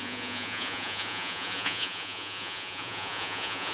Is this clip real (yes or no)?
no